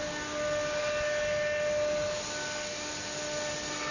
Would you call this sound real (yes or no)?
yes